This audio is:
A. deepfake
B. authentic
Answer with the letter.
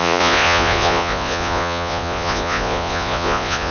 A